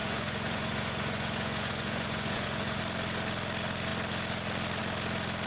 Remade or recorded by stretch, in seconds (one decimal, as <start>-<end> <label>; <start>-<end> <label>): 0.0-2.8 remade; 2.8-5.5 recorded

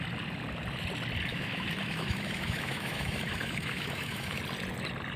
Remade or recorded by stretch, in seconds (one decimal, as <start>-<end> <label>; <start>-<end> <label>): 0.0-1.3 recorded; 1.3-4.4 remade; 4.4-5.2 recorded

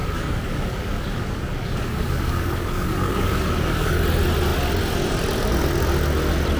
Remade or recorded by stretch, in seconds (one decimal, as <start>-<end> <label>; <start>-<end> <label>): 0.0-4.0 remade; 4.0-6.6 recorded

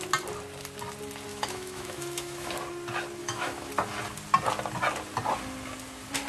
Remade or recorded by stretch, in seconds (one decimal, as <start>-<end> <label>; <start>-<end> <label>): 0.0-1.3 recorded; 1.3-2.5 remade; 2.5-3.2 recorded; 3.2-3.7 remade; 3.7-6.3 recorded

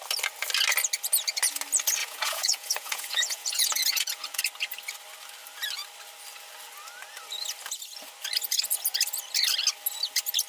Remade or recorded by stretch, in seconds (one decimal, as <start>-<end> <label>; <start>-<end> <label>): 0.0-2.0 recorded; 2.0-4.4 remade; 4.4-10.5 recorded